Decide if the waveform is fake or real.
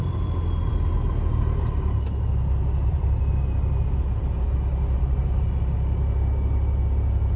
real